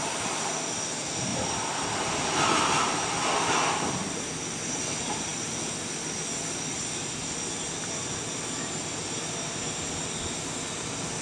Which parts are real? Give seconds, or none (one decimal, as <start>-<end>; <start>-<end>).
0.0-1.3; 2.1-9.0; 10.0-11.2